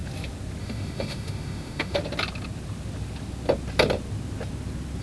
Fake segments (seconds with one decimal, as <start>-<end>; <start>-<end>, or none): 0.6-2.0

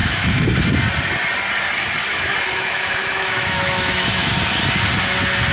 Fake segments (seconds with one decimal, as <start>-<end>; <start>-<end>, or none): 0.0-0.6; 2.1-4.3